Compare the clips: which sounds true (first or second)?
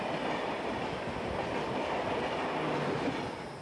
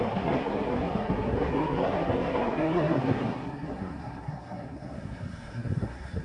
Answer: first